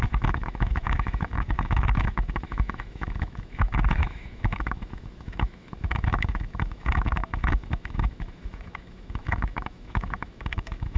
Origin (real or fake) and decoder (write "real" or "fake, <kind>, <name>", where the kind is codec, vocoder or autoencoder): fake, autoencoder, DAC-VAE